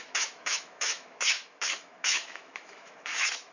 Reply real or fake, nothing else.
fake